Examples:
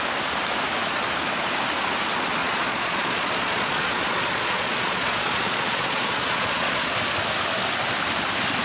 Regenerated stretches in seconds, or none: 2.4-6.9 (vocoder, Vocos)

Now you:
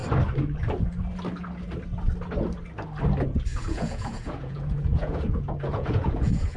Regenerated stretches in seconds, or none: 3.5-6.6 (vocoder, Vocos)

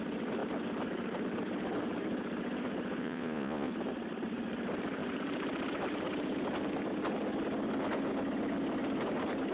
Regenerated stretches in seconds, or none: 3.0-3.7 (vocoder, Vocos)